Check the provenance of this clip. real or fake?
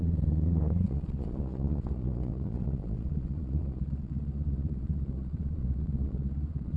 fake